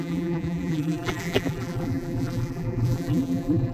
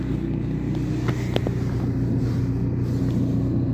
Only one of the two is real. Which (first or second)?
second